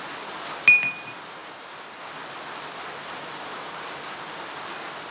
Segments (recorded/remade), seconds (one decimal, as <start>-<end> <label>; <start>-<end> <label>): 0.0-5.1 recorded